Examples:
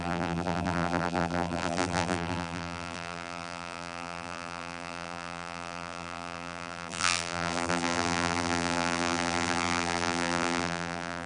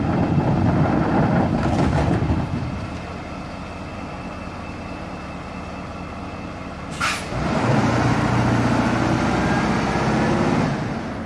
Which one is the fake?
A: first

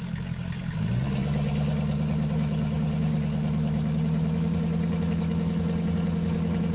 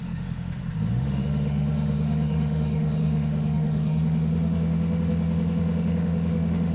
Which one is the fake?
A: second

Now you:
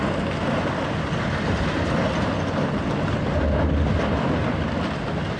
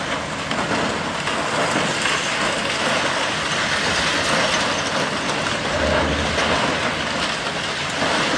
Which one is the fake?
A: first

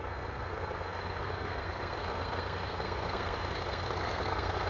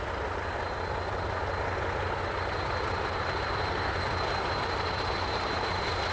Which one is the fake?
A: first